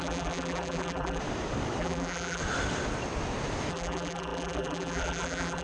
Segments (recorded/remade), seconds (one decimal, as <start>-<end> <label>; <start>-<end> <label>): 0.0-1.2 remade; 1.2-1.8 recorded; 1.8-2.4 remade; 2.4-3.7 recorded; 3.7-5.6 remade